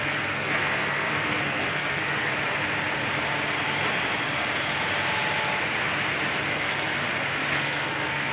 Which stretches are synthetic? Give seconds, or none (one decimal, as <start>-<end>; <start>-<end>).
0.0-2.3; 6.5-7.0; 7.5-8.3